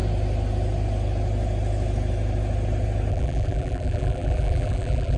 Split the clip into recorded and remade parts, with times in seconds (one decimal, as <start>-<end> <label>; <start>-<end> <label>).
0.0-3.1 recorded; 3.1-5.2 remade